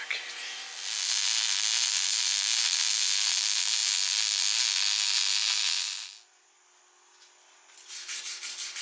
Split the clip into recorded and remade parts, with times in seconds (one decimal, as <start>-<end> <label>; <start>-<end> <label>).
0.0-8.8 recorded